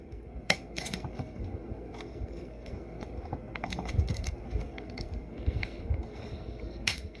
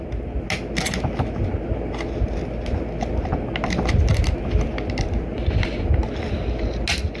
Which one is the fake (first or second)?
first